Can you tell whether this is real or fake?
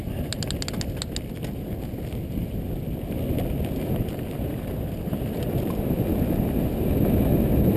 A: real